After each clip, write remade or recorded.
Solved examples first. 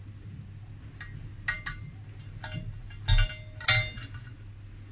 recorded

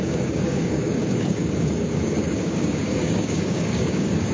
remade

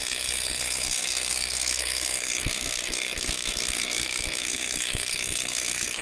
remade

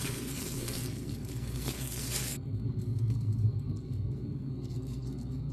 remade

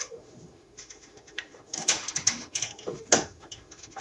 remade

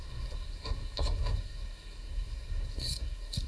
remade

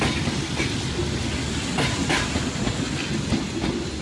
recorded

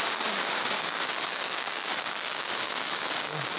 remade